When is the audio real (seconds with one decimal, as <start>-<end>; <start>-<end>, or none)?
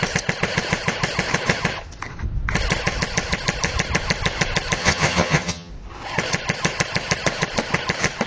0.0-4.8; 5.7-8.3